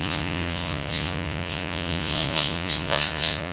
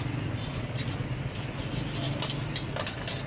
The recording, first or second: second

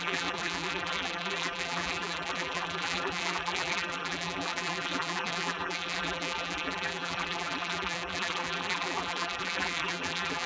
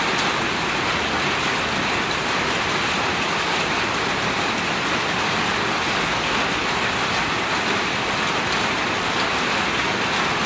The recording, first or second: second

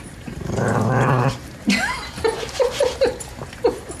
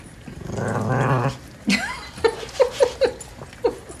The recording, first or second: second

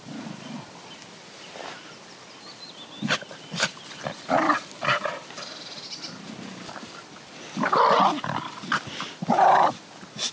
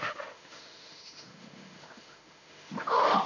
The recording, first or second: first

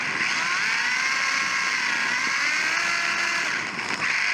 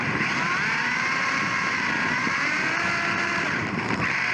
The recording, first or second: first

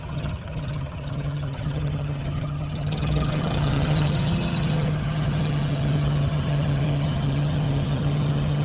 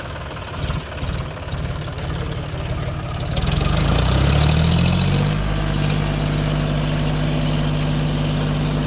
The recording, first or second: second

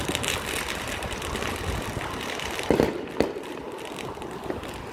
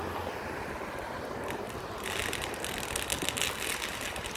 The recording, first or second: second